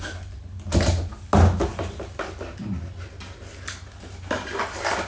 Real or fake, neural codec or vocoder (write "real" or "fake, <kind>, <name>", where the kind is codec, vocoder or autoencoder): real